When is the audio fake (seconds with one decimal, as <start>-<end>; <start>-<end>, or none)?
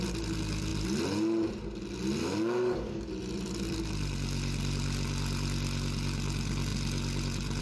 2.2-3.1